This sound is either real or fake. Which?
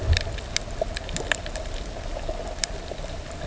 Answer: real